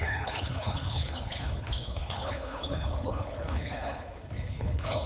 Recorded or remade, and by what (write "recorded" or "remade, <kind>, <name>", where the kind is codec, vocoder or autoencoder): remade, codec, HILCodec